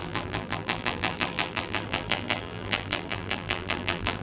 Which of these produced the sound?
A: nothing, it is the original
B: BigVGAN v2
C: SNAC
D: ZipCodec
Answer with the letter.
B